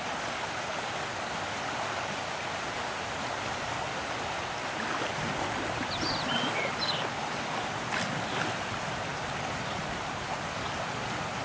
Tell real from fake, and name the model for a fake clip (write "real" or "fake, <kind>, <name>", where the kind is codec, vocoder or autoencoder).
real